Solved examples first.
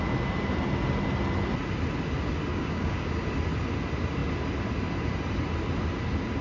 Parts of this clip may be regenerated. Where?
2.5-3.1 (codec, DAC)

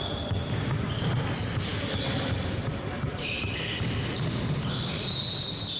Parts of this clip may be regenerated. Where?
none